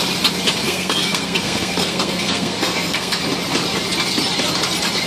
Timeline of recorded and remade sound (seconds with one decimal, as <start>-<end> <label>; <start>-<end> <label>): 0.0-0.6 recorded; 0.6-3.2 remade; 3.2-5.1 recorded